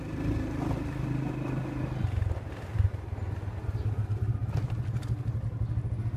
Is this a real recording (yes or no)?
yes